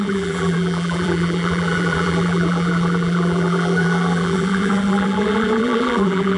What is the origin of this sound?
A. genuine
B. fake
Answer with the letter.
B